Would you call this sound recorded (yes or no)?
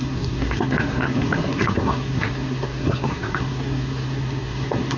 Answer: no